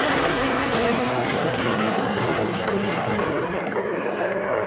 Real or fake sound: fake